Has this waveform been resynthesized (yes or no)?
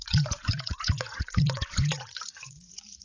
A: yes